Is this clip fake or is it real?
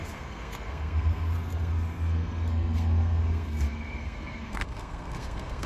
fake